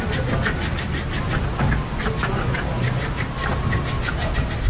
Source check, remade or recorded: recorded